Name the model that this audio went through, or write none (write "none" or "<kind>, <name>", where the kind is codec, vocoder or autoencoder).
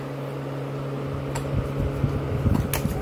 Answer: none